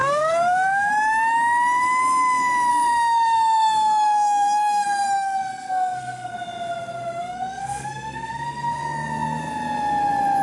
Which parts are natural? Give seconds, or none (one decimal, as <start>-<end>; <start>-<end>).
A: 0.9-2.7; 6.3-7.2; 8.8-10.4